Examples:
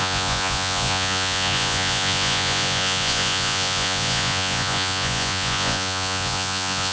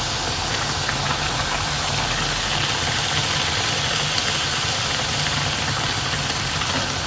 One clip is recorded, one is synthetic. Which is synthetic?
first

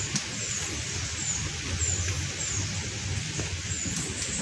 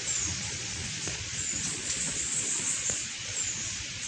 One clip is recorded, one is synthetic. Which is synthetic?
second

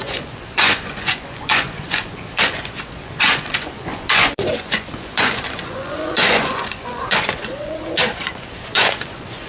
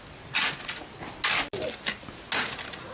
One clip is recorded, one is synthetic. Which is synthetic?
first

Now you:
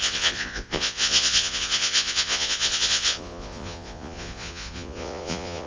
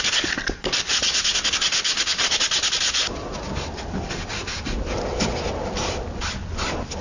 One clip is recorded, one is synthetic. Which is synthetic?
first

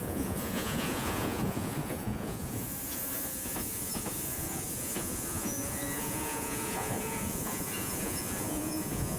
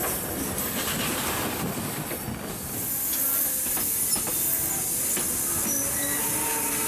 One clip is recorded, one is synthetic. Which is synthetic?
first